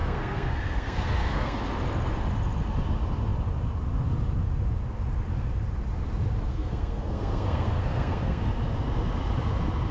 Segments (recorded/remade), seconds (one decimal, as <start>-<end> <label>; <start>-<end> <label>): 0.0-1.6 remade; 1.6-6.5 recorded; 6.5-8.4 remade; 8.4-9.9 recorded